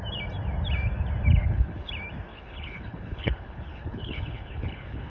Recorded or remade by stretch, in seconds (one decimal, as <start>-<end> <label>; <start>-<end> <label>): 0.0-1.4 recorded; 1.4-1.9 remade; 1.9-2.3 recorded; 2.3-5.1 remade